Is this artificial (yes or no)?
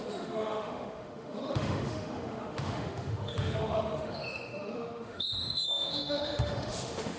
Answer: yes